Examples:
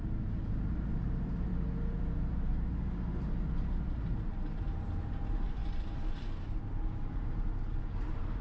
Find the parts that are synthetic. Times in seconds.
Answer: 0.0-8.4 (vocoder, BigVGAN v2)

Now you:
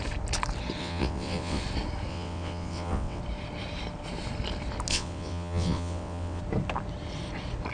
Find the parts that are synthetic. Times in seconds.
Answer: 0.8-1.6 (vocoder, WaveNeXt); 2.1-3.2; 4.9-6.4

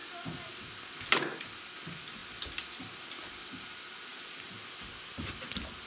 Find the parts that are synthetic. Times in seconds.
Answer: 4.1-5.3 (vocoder, BigVGAN v2)